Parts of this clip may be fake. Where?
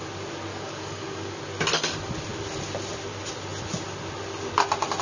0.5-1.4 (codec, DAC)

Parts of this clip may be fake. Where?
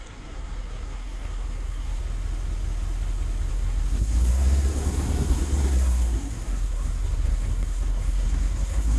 0.0-2.0 (codec, SNAC); 3.5-9.0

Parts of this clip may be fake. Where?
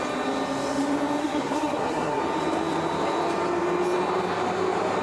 1.2-2.2 (codec, SNAC)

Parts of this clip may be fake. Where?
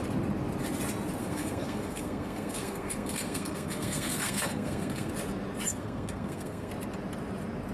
1.2-5.1 (codec, SNAC); 5.7-6.7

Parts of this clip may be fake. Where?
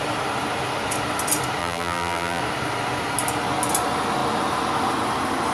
1.6-2.4 (vocoder, BigVGAN v2)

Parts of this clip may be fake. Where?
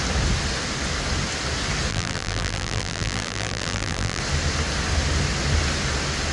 1.9-4.2 (vocoder, BigVGAN v2)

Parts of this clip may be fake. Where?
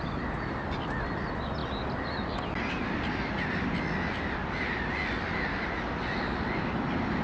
none